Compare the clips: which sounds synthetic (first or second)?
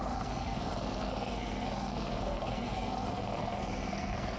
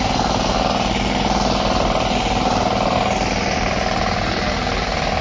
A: first